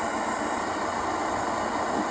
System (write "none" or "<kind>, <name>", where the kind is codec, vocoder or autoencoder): none